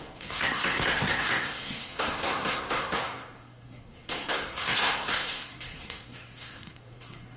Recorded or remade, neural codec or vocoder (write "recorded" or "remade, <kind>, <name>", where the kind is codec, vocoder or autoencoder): remade, codec, SNAC